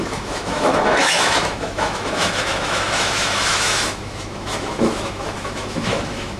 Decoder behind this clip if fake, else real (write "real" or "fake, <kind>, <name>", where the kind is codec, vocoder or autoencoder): fake, autoencoder, DAC-VAE